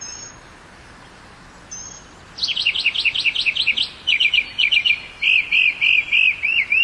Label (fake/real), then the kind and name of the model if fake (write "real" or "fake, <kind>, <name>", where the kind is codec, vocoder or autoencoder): real